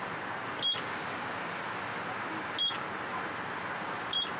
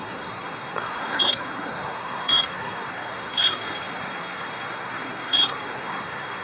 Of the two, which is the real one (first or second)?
first